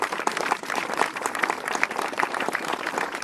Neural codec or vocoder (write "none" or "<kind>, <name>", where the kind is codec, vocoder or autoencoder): vocoder, BigVGAN v2